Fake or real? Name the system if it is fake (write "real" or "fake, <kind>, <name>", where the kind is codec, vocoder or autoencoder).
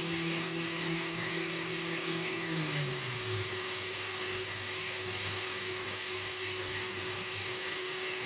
fake, codec, DAC